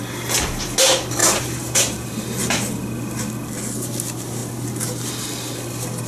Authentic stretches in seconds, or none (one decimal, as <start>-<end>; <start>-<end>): 0.0-1.2; 2.4-6.1